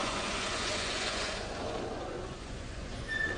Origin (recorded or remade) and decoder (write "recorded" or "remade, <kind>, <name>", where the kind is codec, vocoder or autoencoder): remade, vocoder, Vocos